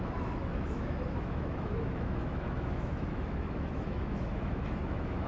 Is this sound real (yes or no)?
no